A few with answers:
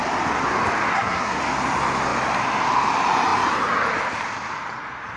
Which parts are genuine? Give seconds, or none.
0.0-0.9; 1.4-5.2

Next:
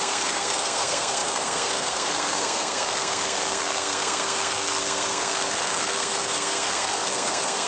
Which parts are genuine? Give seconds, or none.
none

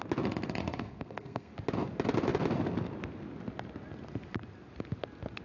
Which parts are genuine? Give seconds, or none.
0.0-0.6; 1.5-5.4

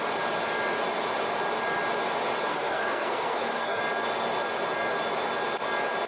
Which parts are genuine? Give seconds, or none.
0.0-2.5; 3.8-6.1

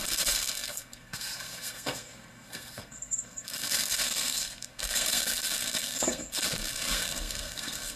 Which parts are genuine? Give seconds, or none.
none